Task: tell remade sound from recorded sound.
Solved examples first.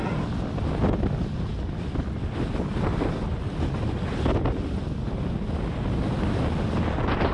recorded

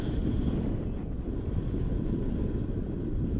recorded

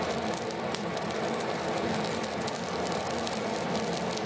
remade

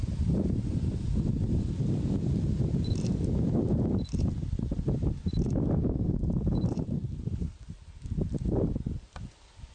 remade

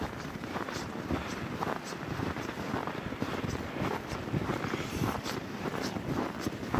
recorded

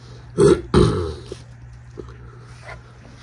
recorded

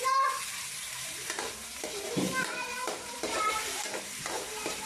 remade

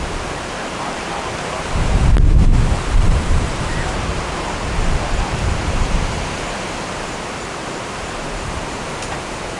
remade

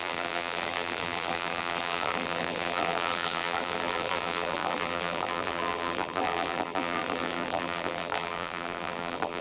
remade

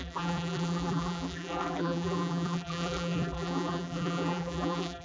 remade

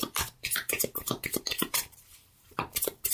remade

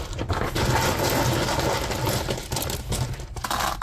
recorded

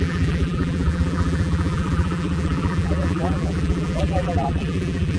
remade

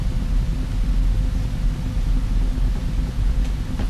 recorded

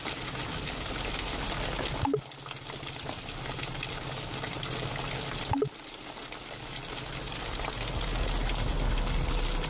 recorded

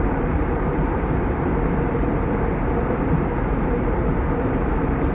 remade